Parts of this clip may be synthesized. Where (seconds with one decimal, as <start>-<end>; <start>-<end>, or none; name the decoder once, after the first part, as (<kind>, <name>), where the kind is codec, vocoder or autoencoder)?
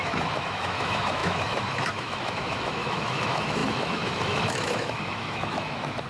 0.0-6.1 (autoencoder, DAC-VAE)